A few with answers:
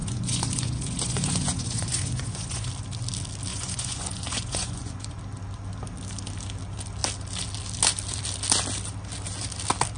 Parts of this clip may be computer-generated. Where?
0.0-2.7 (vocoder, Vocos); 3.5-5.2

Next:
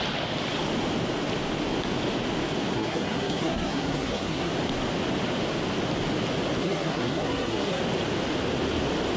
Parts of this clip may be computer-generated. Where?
2.7-4.5 (codec, SNAC); 6.6-7.8

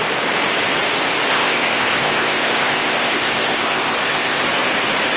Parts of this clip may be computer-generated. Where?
1.3-4.4 (codec, ZipCodec)

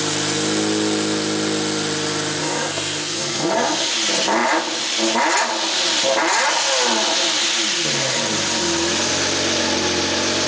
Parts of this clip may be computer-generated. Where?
2.4-3.9 (codec, SNAC)